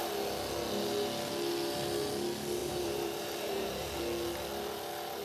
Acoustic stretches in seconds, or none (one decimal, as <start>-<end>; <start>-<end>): 0.0-2.6; 4.0-5.2